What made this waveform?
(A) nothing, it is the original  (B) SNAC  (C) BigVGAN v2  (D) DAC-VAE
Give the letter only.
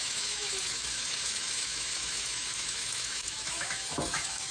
D